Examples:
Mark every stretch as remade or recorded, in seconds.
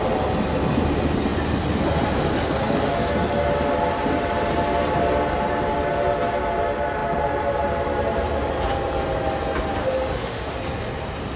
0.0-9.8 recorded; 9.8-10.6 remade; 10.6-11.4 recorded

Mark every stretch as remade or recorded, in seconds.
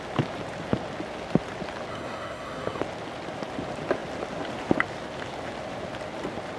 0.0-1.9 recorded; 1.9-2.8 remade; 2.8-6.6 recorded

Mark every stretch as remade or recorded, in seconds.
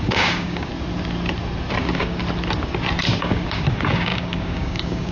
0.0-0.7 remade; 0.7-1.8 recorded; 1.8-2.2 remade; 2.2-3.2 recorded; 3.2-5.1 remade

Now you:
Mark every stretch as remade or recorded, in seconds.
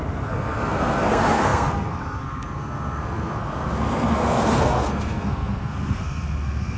0.0-6.8 remade